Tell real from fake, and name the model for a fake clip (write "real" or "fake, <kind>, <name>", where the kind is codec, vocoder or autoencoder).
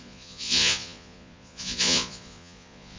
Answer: fake, vocoder, Vocos